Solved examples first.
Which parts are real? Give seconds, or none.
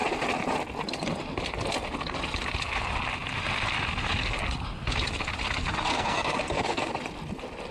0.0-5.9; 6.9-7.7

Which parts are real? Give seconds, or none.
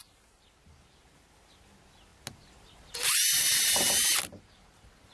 0.0-5.1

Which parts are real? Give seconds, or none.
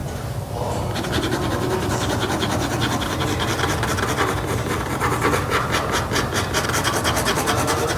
0.0-8.0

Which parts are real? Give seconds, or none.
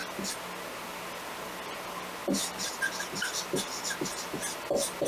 0.0-5.1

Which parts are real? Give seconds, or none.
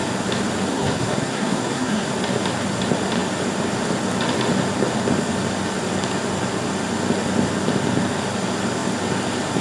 0.0-0.7; 2.1-9.6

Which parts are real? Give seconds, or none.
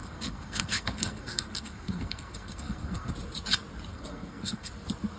3.1-3.9; 4.7-5.2